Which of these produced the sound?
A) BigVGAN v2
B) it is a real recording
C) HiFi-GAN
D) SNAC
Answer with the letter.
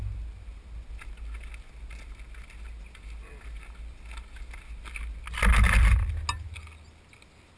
B